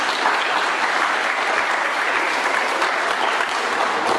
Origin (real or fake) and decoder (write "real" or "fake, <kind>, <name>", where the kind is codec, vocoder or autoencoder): real